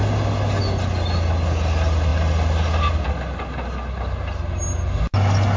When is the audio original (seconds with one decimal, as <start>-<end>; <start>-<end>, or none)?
0.0-5.6